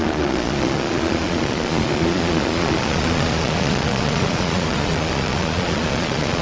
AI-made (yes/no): yes